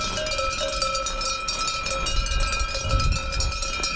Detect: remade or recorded recorded